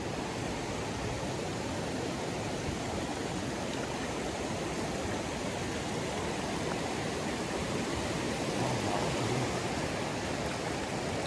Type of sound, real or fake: real